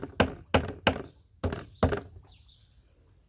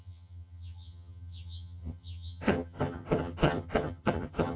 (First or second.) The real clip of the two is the first